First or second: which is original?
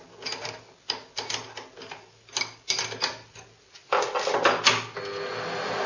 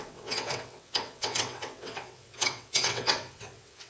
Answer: first